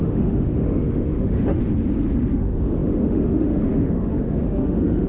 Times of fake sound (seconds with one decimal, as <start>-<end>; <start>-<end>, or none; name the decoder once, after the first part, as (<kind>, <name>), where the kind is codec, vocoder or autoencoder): 0.0-1.6 (autoencoder, DAC-VAE); 2.3-5.1